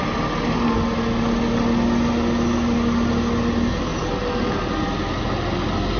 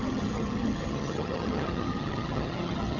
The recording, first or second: first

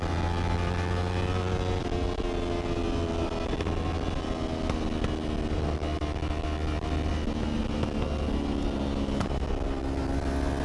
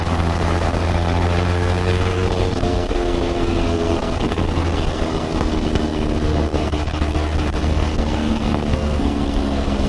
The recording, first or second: first